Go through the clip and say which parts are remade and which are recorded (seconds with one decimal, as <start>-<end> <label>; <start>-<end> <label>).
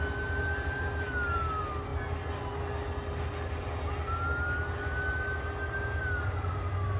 0.0-7.0 recorded